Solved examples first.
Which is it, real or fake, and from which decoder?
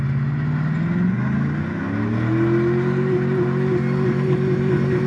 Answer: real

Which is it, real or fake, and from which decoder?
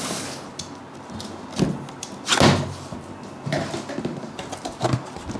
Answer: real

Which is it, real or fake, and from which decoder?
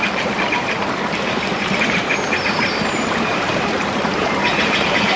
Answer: fake, vocoder, BigVGAN v2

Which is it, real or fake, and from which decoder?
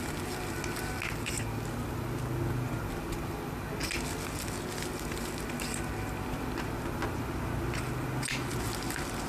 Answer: real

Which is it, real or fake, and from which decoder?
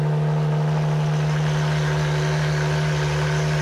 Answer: real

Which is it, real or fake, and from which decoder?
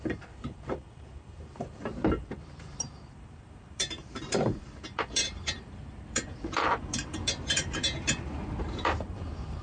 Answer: fake, vocoder, BigVGAN v2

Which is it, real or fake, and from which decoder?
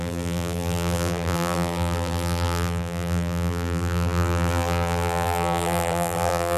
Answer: fake, vocoder, BigVGAN v2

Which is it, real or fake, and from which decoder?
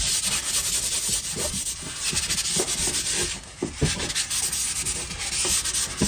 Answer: real